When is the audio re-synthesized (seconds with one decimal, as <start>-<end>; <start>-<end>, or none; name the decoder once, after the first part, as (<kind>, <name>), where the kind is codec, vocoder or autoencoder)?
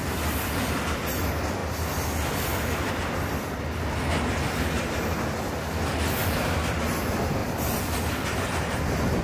none